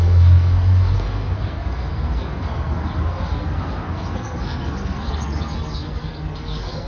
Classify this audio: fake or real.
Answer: fake